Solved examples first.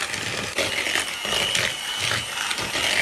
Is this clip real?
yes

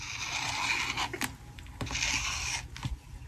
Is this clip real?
yes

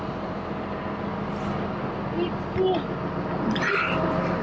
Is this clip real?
yes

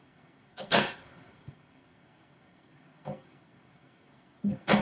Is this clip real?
no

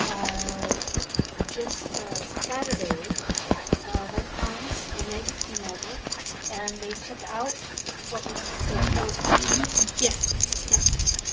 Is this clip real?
no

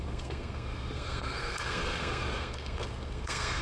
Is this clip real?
no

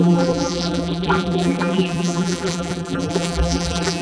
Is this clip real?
no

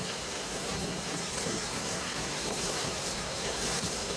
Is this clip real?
no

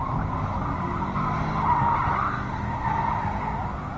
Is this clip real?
yes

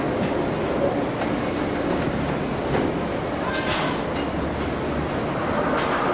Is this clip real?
yes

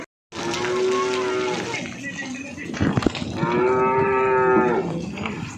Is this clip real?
yes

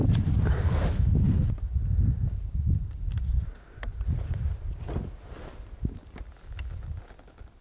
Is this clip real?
yes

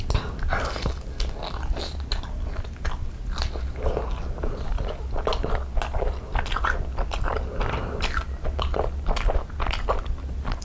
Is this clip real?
yes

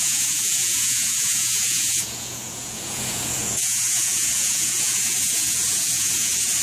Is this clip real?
no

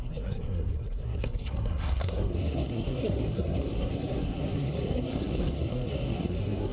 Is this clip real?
no